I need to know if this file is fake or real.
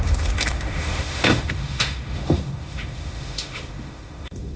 fake